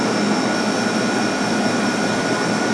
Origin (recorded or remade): recorded